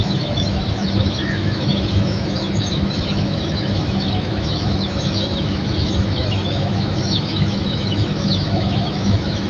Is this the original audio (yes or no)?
no